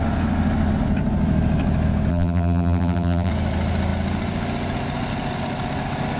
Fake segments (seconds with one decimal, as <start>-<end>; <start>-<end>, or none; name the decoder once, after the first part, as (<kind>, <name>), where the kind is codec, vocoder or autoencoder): 2.1-3.3 (vocoder, BigVGAN v2)